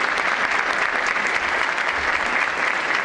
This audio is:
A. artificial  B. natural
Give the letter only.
B